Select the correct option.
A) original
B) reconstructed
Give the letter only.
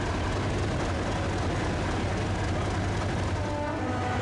A